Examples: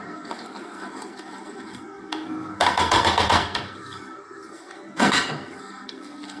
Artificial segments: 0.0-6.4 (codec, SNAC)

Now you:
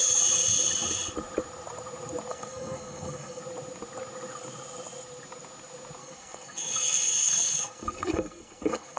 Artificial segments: 2.3-3.4 (codec, SNAC); 6.0-9.0

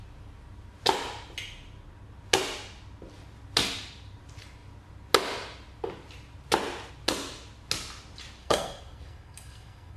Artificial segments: 8.4-10.0 (codec, SNAC)

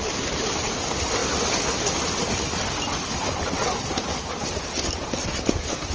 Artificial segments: none

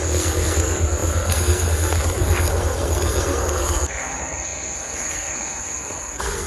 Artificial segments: 0.0-6.5 (codec, SNAC)

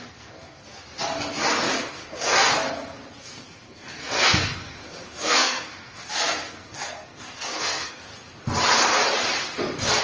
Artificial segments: 0.0-0.6 (codec, SNAC); 1.7-2.5; 3.2-8.1

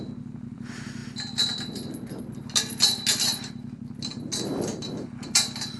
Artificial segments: none

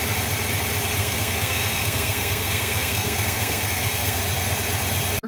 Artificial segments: 1.0-4.2 (codec, SNAC)